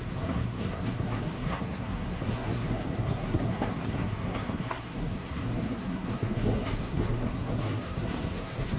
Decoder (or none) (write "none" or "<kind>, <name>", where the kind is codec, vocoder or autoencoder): codec, SNAC